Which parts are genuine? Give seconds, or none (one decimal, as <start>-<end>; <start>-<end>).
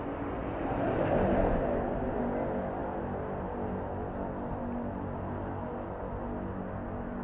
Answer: 0.0-0.6; 2.2-7.2